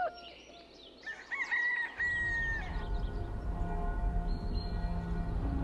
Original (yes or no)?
yes